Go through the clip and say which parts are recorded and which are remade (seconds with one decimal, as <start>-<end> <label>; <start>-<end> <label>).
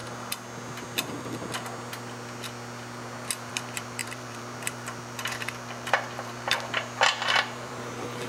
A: 0.0-3.5 recorded; 3.5-8.3 remade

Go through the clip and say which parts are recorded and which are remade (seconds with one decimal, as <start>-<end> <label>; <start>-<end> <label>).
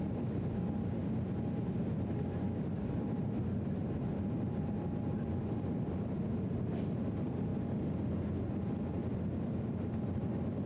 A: 0.0-1.0 remade; 1.0-1.8 recorded; 1.8-7.5 remade; 7.5-8.1 recorded; 8.1-10.7 remade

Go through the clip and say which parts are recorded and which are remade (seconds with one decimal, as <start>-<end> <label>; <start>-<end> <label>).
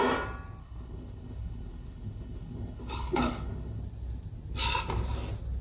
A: 0.0-0.6 recorded; 0.6-3.8 remade; 3.8-5.6 recorded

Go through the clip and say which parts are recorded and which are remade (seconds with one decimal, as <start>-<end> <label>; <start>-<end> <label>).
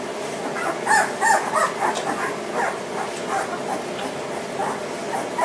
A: 0.0-5.4 recorded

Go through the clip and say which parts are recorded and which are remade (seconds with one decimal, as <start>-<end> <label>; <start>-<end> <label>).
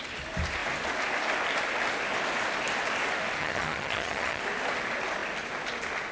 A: 0.0-3.4 recorded; 3.4-4.4 remade; 4.4-6.1 recorded